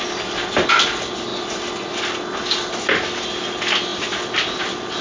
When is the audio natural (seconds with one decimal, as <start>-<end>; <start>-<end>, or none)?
0.0-5.0